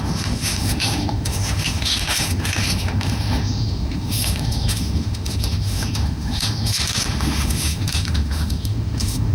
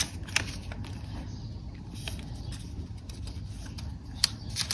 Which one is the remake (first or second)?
first